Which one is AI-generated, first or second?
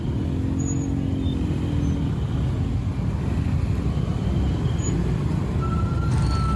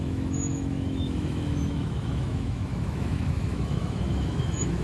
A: second